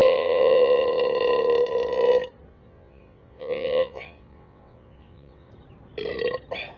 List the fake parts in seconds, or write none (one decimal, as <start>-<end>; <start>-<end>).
0.0-0.6; 2.5-5.5